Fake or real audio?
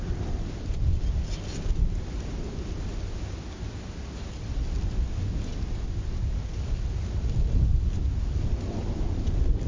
real